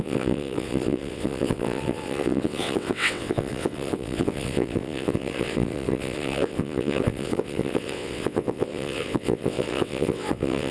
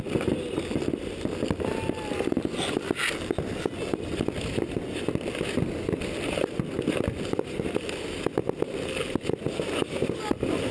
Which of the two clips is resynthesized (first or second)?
first